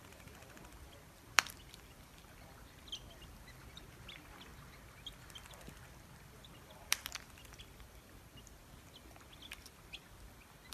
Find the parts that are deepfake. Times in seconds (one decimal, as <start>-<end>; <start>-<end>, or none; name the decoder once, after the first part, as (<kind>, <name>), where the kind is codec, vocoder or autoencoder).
0.0-8.6 (vocoder, BigVGAN v2)